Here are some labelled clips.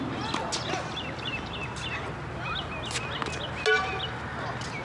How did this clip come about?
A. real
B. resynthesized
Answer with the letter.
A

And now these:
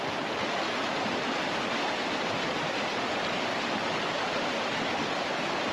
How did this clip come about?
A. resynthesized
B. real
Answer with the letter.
B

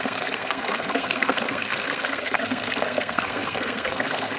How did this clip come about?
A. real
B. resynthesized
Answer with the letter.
B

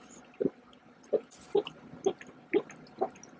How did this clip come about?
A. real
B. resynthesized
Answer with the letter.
A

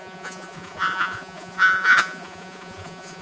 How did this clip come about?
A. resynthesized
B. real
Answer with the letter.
A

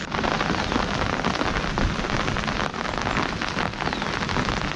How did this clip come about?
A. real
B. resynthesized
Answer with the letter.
A